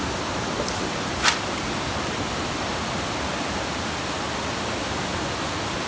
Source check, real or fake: real